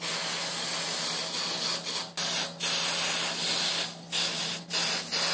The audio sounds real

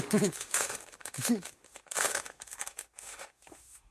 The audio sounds fake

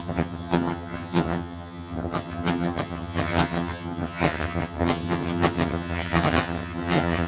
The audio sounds fake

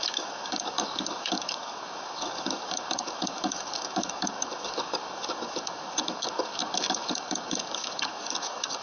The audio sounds fake